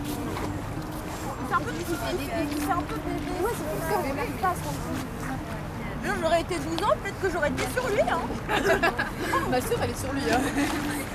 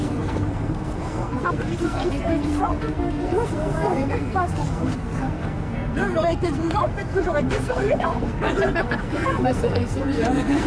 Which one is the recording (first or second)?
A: first